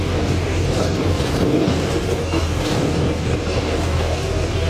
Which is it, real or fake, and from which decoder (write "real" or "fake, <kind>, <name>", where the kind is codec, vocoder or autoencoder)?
fake, codec, DAC